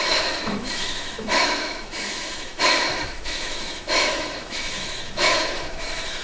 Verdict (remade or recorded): remade